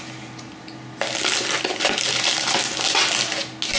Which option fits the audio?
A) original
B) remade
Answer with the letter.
A